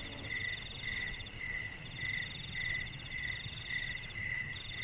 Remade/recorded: remade